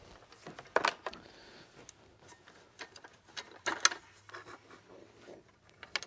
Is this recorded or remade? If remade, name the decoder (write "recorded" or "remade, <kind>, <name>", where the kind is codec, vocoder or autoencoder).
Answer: recorded